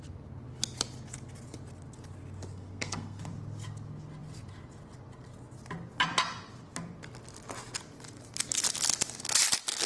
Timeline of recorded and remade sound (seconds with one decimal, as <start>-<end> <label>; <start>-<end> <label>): 0.0-2.5 recorded; 2.5-3.2 remade; 3.2-9.9 recorded

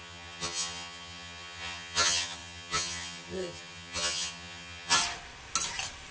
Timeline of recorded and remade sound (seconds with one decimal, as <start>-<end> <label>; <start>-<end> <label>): 0.0-5.0 remade; 5.0-6.1 recorded

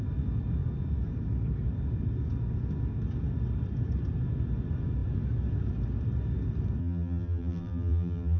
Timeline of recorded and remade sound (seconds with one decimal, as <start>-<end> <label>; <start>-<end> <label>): 0.0-6.8 recorded; 6.8-8.4 remade

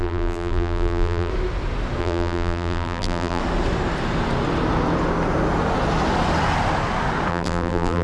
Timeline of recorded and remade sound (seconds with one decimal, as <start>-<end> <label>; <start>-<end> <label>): 0.0-1.3 remade; 1.3-2.0 recorded; 2.0-3.4 remade; 3.4-7.3 recorded; 7.3-8.0 remade

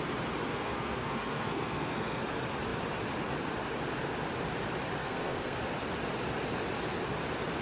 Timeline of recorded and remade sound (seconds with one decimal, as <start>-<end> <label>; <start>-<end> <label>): 0.0-0.5 recorded; 0.5-2.2 remade; 2.2-5.0 recorded; 5.0-5.6 remade; 5.6-7.6 recorded

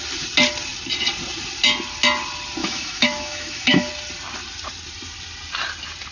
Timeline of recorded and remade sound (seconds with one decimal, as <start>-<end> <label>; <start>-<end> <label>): 0.0-2.6 recorded; 2.6-3.9 remade; 3.9-6.1 recorded

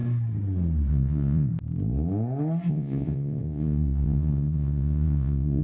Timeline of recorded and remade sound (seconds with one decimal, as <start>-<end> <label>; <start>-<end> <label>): 0.0-0.9 recorded; 0.9-1.5 remade; 1.5-2.7 recorded; 2.7-5.6 remade

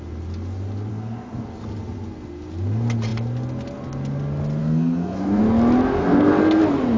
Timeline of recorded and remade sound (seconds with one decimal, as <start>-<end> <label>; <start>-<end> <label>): 0.0-0.9 recorded; 0.9-1.4 remade; 1.4-4.6 recorded; 4.6-5.4 remade; 5.4-6.0 recorded; 6.0-6.6 remade; 6.6-7.0 recorded